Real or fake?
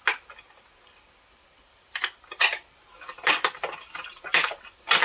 real